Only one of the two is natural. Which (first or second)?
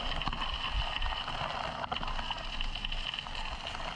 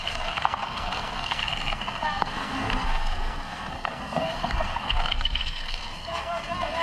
first